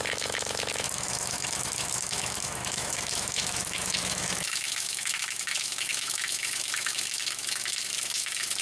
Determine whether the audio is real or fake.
fake